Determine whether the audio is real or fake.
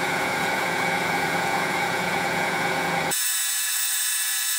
fake